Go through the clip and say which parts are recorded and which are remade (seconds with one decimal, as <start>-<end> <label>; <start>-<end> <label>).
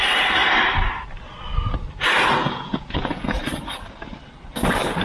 0.0-2.4 recorded; 2.4-3.4 remade; 3.4-5.0 recorded